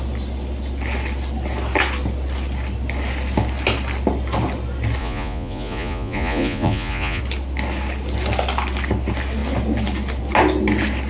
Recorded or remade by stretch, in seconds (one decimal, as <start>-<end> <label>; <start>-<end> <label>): 0.0-5.0 recorded; 5.0-7.2 remade; 7.2-11.1 recorded